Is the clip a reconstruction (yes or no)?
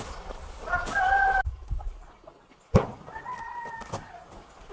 no